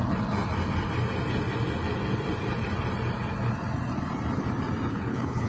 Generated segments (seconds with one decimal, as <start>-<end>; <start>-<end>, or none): 4.9-5.5